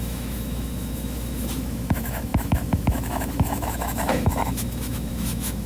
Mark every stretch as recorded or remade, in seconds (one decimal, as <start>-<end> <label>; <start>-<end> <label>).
0.0-5.7 remade